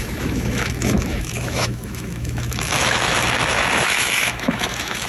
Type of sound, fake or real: fake